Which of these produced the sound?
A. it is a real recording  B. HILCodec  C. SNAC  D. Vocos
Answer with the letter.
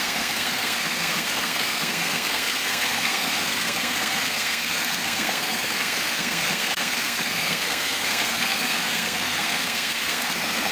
C